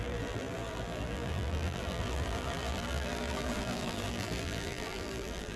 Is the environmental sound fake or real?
fake